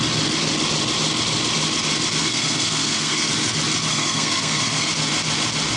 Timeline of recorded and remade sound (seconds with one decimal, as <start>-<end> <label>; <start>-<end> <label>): 0.0-2.2 recorded; 2.2-3.3 remade; 3.3-3.9 recorded; 3.9-4.9 remade; 4.9-5.8 recorded

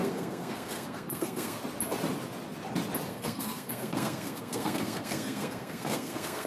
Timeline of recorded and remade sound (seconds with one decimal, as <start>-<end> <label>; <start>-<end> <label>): 0.0-1.6 remade; 1.6-3.1 recorded; 3.1-6.5 remade

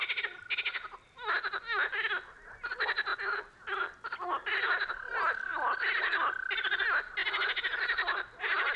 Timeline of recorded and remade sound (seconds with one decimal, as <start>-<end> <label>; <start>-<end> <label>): 0.0-8.8 recorded

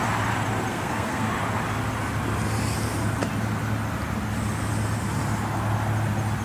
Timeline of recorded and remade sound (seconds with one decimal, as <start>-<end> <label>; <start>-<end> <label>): 0.0-0.7 recorded; 0.7-1.3 remade; 1.3-6.4 recorded

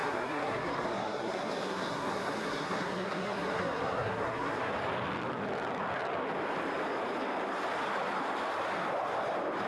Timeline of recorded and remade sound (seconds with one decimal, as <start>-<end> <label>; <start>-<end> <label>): 0.0-4.7 remade; 4.7-9.7 recorded

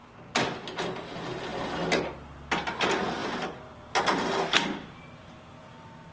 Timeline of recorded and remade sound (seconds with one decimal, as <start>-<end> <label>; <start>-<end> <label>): 0.0-6.1 recorded

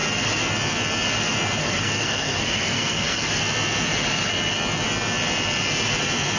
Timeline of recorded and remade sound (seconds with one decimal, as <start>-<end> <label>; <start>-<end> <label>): 0.0-1.6 recorded; 1.6-3.3 remade; 3.3-6.4 recorded